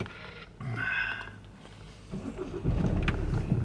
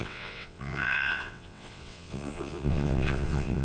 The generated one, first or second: second